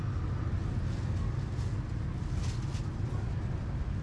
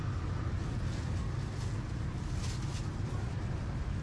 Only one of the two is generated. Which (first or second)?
second